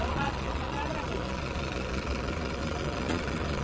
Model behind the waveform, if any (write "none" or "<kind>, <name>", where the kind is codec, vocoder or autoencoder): vocoder, Vocos